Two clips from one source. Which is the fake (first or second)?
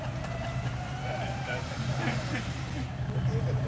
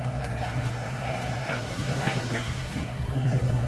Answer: second